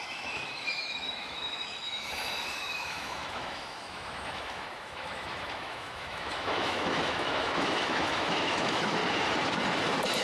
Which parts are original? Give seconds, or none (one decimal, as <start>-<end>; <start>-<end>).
9.0-10.2